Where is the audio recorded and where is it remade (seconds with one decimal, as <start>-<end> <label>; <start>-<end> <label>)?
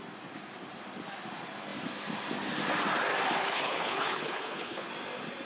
0.0-3.4 recorded; 3.4-4.9 remade; 4.9-5.5 recorded